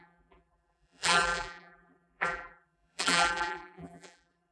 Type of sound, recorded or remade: remade